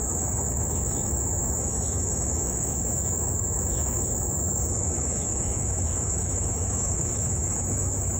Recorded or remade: remade